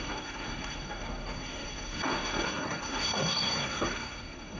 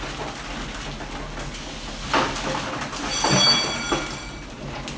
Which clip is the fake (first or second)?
first